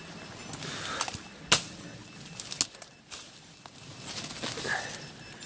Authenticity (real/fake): real